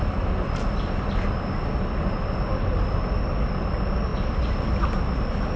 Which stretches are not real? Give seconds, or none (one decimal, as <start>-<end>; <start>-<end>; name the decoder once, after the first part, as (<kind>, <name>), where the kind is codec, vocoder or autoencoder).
none